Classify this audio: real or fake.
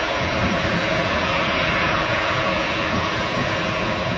fake